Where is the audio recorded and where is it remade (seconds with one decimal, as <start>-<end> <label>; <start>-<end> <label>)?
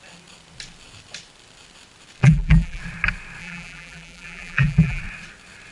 0.0-2.2 recorded; 2.2-2.8 remade; 2.8-3.4 recorded; 3.4-5.0 remade; 5.0-5.7 recorded